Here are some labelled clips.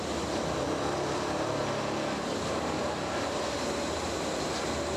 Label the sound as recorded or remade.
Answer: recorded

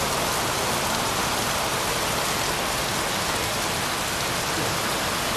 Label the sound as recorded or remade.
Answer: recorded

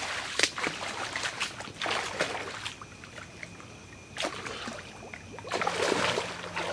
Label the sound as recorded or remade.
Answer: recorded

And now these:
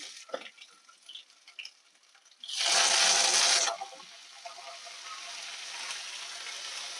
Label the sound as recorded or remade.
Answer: recorded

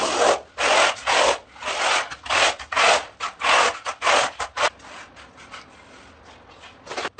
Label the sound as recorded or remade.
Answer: recorded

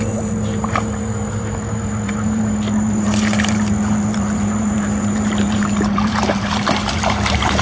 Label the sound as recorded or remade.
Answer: remade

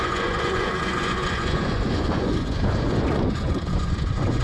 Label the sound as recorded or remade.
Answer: remade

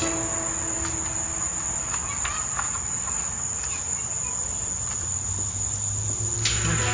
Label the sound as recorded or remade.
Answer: recorded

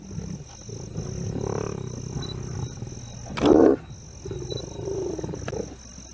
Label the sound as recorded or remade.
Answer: recorded